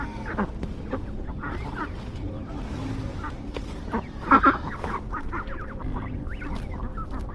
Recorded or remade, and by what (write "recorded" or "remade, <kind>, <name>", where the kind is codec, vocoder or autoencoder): recorded